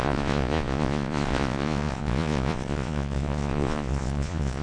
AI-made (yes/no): yes